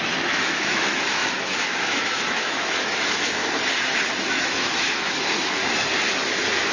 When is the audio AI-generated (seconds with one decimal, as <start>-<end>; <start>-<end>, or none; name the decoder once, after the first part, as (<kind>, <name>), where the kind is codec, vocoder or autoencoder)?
0.0-3.4 (autoencoder, DAC-VAE); 4.4-5.6